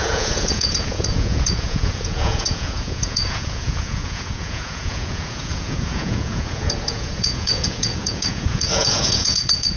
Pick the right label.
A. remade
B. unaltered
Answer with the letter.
A